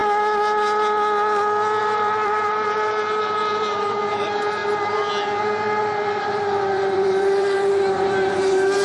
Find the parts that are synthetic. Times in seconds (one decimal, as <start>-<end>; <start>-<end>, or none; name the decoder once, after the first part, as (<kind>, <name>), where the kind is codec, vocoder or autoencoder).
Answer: 1.8-4.6 (vocoder, BigVGAN v2); 6.6-8.8